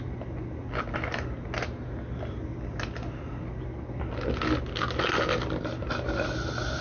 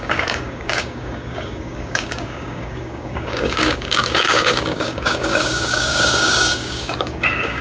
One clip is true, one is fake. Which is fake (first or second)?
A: second